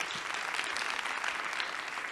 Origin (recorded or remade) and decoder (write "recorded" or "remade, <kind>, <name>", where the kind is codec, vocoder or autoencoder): recorded